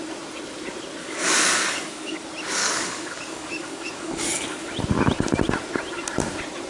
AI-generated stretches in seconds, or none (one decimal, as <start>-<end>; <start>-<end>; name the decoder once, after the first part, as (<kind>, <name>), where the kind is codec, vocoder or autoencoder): 1.0-2.2 (codec, DAC); 2.6-4.7